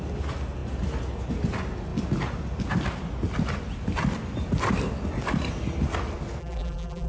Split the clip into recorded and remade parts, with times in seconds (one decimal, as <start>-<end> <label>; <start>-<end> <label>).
0.0-6.4 recorded; 6.4-7.1 remade